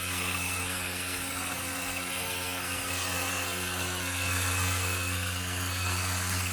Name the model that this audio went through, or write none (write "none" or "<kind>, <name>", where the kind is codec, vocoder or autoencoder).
codec, SNAC